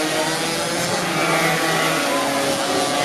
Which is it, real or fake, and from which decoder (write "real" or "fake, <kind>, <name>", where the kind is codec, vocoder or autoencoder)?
real